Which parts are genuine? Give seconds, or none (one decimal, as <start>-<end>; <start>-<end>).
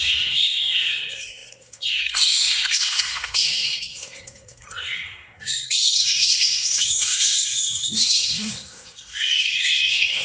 none